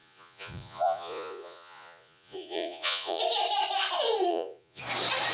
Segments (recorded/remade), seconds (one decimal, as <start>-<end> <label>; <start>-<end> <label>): 0.0-3.2 remade; 3.2-4.3 recorded; 4.3-4.8 remade; 4.8-5.3 recorded